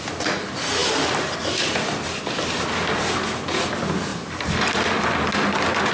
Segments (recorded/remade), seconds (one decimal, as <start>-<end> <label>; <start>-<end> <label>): 0.0-5.9 recorded